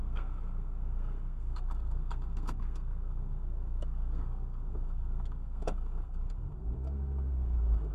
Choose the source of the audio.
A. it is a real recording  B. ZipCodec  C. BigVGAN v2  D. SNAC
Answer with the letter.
D